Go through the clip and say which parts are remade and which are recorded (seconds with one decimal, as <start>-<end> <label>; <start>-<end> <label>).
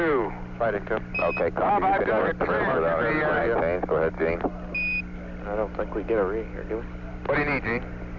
0.0-8.2 recorded